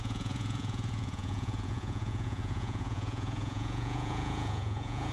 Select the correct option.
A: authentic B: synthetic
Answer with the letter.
B